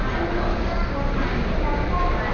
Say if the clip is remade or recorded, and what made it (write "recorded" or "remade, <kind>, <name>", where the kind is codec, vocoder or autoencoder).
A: recorded